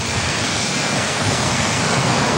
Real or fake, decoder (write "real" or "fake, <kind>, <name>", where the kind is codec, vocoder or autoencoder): fake, codec, SNAC